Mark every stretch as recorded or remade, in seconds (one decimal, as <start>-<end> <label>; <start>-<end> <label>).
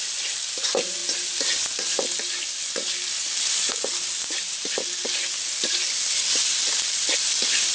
0.0-7.7 recorded